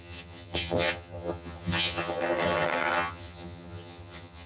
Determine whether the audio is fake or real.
fake